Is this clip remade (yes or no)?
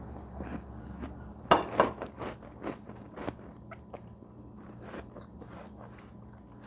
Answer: no